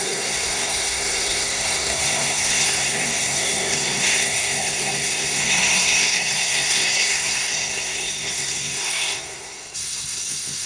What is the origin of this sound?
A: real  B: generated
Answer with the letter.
B